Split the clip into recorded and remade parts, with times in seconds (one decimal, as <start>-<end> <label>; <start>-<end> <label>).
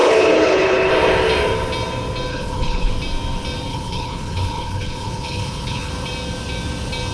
0.0-0.9 remade; 0.9-2.3 recorded; 2.3-2.9 remade; 2.9-3.7 recorded; 3.7-5.9 remade; 5.9-7.1 recorded